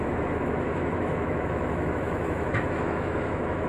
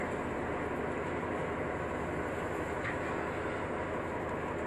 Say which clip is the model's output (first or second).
first